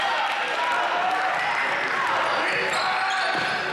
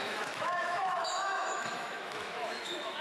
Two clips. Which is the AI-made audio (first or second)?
second